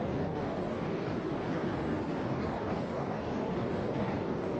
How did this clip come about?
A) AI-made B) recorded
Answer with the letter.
A